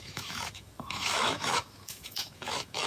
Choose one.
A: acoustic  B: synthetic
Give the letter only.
B